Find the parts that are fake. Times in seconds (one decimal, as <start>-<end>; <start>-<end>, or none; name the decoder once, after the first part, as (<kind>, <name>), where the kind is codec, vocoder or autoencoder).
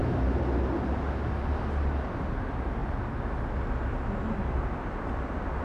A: none